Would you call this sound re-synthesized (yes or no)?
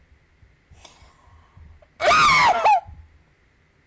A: no